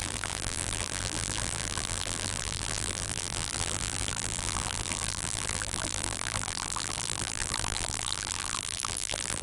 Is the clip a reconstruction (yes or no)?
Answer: yes